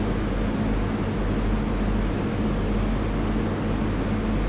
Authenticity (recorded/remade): recorded